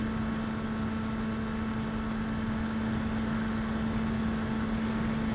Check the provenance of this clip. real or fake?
real